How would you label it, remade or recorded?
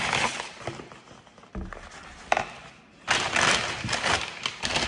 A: recorded